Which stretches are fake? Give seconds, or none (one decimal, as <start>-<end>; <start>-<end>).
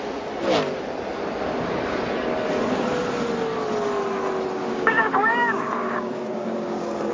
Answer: 4.6-7.1